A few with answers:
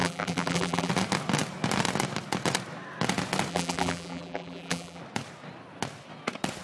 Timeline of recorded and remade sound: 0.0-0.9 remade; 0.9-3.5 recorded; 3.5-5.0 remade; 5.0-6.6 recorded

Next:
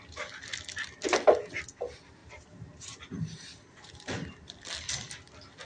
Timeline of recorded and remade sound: 0.0-2.2 recorded; 2.2-4.5 remade; 4.5-5.7 recorded

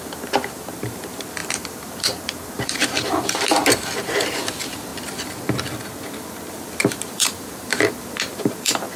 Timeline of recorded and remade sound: 0.0-4.9 remade; 4.9-6.5 recorded; 6.5-9.0 remade

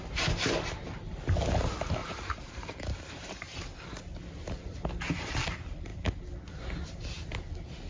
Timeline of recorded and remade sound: 0.0-2.0 recorded; 2.0-4.0 remade; 4.0-7.9 recorded